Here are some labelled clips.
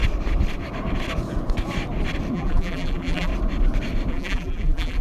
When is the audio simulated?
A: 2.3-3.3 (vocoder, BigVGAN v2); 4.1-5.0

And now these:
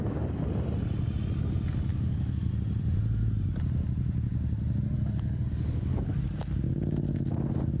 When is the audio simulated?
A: 1.9-2.5 (codec, DAC); 5.5-6.2

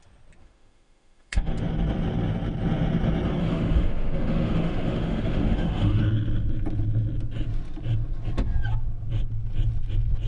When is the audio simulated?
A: 0.4-1.5 (autoencoder, DAC-VAE); 3.4-6.0

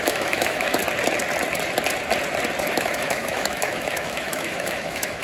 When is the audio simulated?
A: 0.0-0.8 (autoencoder, DAC-VAE); 2.6-5.2

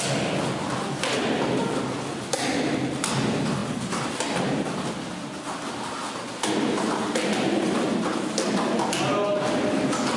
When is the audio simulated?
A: none

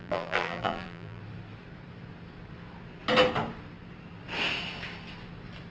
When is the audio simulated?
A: 0.0-1.2 (vocoder, BigVGAN v2)

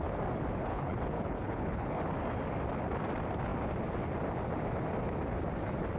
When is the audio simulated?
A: 0.7-2.0 (codec, HILCodec)

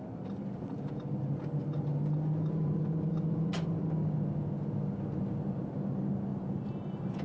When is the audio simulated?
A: 6.3-7.2 (vocoder, BigVGAN v2)